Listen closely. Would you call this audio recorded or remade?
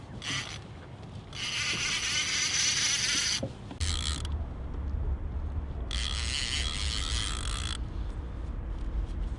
recorded